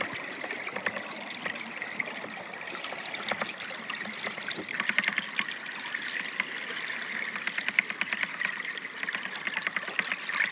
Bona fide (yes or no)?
yes